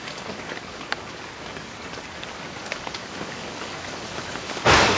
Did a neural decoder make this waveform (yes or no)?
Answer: yes